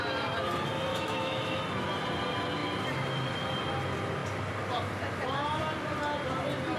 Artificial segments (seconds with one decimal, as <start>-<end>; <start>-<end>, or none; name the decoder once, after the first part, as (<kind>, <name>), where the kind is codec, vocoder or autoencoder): 0.9-1.6 (autoencoder, DAC-VAE)